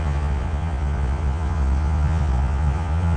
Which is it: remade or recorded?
remade